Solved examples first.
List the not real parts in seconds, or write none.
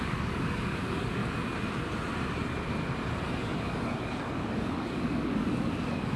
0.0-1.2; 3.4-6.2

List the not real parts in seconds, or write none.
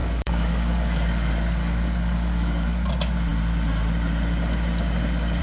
0.0-2.9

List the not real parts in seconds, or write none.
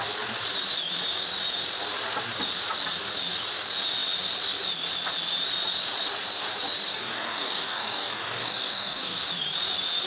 6.9-9.2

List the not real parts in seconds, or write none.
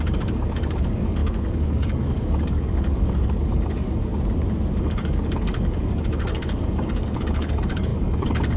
0.0-4.1; 4.8-8.6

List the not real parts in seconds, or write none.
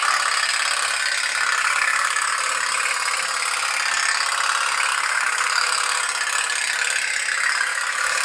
1.6-2.3; 4.9-6.0; 7.7-8.2